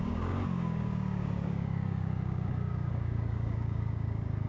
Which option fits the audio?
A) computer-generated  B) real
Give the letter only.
A